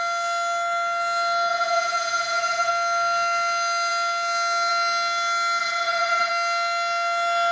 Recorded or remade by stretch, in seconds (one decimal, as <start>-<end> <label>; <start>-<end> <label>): 0.0-1.5 recorded; 1.5-2.7 remade; 2.7-5.6 recorded; 5.6-6.3 remade; 6.3-7.5 recorded

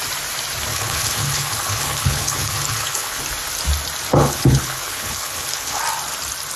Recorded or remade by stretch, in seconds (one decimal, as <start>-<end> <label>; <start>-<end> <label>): 0.0-0.7 recorded; 0.7-3.2 remade; 3.2-4.1 recorded; 4.1-5.8 remade; 5.8-6.6 recorded